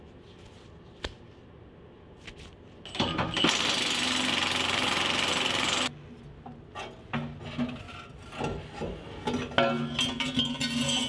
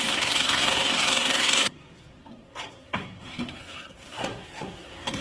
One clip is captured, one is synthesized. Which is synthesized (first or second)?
second